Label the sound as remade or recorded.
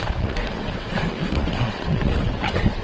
remade